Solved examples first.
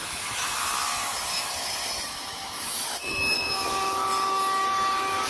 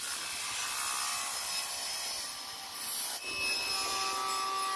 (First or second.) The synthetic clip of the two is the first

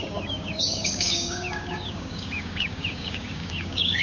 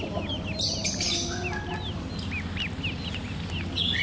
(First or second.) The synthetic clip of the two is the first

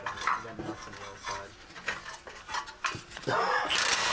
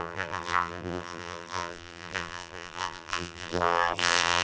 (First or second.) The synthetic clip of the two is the second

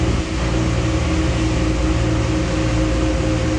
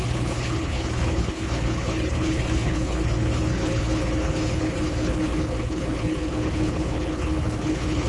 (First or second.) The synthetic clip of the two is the second